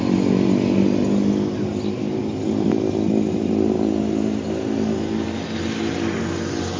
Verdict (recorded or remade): recorded